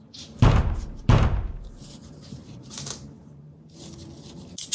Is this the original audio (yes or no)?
no